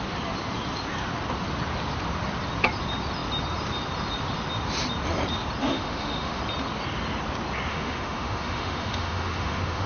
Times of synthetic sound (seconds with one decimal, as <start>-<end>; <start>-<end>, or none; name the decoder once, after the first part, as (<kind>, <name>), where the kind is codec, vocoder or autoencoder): 5.6-6.4 (autoencoder, DAC-VAE); 7.7-9.9